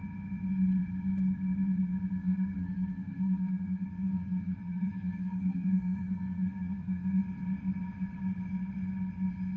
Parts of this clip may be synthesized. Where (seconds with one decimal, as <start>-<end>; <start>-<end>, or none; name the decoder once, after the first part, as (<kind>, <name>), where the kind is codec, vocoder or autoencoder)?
2.2-7.2 (codec, SNAC)